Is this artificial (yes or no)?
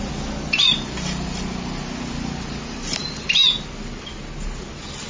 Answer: no